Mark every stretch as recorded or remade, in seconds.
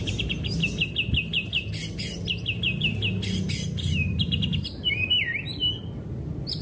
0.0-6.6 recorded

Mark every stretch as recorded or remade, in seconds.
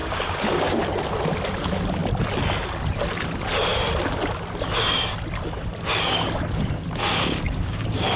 0.0-0.8 remade; 0.8-7.0 recorded; 7.0-8.2 remade